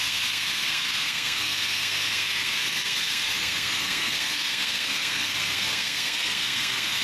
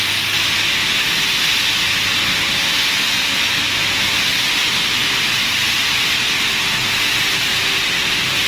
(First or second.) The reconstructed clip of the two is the first